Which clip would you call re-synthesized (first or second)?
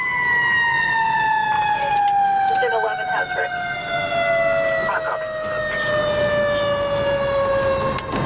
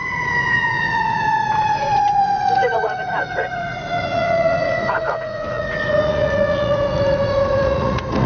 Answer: second